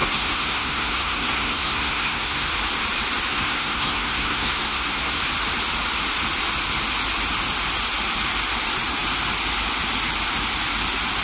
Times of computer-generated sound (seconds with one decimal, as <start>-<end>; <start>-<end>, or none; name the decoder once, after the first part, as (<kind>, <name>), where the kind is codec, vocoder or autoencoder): 0.0-2.5 (codec, SNAC); 3.3-5.2